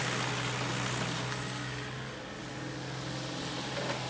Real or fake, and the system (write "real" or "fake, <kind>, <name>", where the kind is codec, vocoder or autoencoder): real